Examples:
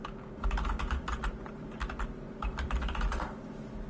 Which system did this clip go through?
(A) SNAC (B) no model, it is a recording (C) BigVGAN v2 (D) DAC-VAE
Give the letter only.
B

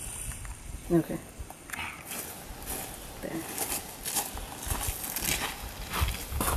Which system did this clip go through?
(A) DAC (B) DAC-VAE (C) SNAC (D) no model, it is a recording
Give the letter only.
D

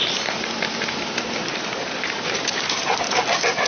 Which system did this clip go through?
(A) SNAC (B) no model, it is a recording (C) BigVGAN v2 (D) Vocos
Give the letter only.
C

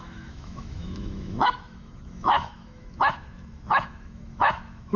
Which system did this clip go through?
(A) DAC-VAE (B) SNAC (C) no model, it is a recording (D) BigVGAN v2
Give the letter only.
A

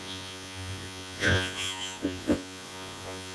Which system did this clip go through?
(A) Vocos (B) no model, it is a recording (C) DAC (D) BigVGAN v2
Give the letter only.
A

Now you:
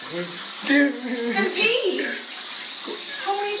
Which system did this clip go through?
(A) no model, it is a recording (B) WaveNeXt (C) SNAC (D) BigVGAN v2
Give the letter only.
A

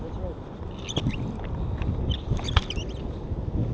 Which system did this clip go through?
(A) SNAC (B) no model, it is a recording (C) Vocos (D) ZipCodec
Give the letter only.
B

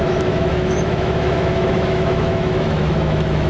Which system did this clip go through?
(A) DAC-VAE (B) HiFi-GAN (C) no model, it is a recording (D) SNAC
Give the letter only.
A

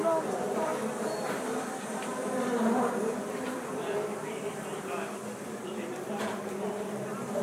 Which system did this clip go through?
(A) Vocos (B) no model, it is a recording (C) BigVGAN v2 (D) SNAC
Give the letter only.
C